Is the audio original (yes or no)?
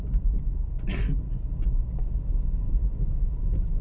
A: yes